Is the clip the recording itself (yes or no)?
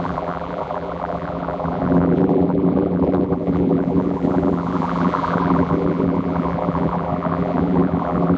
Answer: no